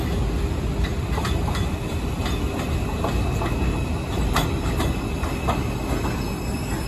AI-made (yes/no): no